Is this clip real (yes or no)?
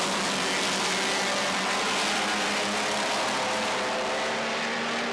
yes